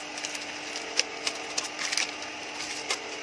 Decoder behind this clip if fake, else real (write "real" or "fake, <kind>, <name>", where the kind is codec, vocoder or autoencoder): real